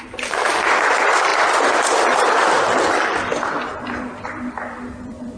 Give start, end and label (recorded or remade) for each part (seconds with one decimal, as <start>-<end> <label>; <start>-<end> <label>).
0.0-5.4 remade